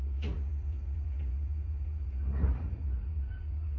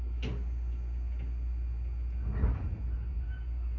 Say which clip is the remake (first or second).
first